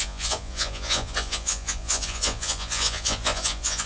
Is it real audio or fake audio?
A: fake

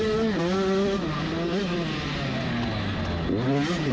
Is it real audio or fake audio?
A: real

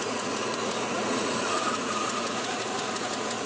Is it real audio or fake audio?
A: fake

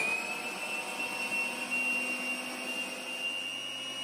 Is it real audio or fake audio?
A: real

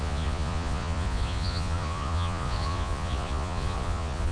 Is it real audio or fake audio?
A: fake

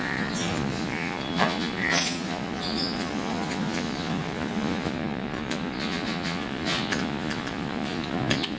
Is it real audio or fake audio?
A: fake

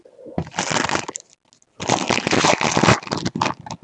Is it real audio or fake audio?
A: real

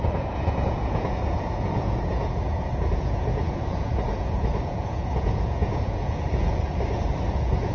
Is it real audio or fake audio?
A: fake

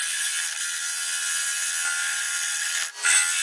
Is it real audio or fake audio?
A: real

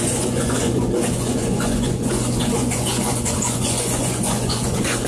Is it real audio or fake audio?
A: fake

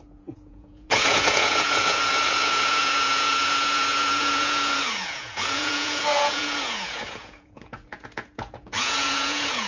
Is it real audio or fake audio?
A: fake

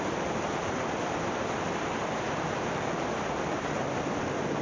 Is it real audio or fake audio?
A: real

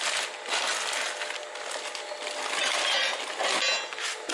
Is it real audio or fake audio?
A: real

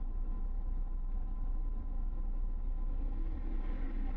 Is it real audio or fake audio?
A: real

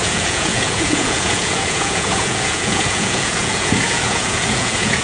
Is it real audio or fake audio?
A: fake